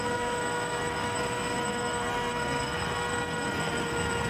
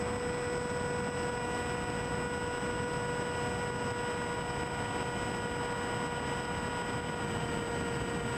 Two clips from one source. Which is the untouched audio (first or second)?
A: second